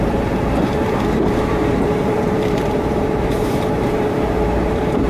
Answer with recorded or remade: remade